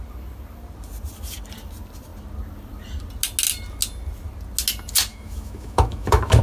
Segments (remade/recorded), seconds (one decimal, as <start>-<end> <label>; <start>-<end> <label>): 0.0-5.1 recorded; 5.1-6.4 remade